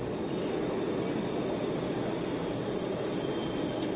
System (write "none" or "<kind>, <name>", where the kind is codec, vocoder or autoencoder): none